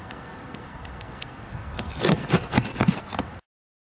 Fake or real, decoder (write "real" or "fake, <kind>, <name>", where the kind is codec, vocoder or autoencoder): fake, codec, SNAC